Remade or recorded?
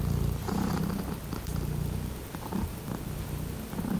recorded